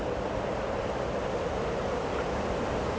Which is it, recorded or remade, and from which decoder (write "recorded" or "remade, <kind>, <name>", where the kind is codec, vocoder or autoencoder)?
recorded